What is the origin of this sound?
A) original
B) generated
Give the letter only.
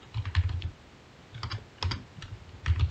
A